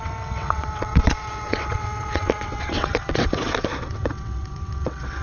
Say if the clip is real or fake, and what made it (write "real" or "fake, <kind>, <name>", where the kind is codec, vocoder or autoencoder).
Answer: fake, vocoder, WaveNeXt